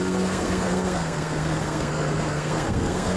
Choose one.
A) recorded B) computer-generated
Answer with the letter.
B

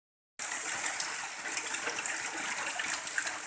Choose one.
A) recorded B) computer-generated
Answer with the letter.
A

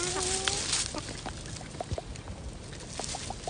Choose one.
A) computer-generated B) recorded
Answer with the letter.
B